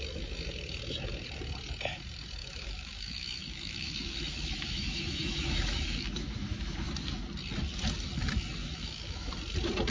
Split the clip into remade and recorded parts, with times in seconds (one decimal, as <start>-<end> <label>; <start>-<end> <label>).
0.0-2.4 recorded; 2.4-6.9 remade; 6.9-8.6 recorded; 8.6-9.3 remade; 9.3-9.9 recorded